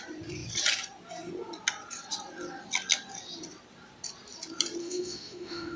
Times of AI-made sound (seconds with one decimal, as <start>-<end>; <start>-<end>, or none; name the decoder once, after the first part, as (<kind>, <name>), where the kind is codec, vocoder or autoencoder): 4.8-5.8 (autoencoder, DAC-VAE)